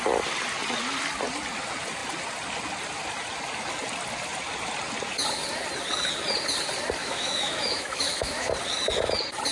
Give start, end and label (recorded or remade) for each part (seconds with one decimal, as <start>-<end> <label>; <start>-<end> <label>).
0.0-7.0 recorded; 7.0-8.5 remade; 8.5-9.5 recorded